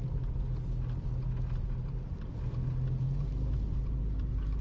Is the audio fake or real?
real